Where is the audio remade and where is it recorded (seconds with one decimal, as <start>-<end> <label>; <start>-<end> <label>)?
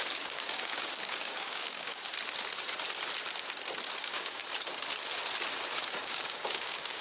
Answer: 0.0-2.1 remade; 2.1-4.0 recorded; 4.0-4.4 remade; 4.4-6.0 recorded; 6.0-7.0 remade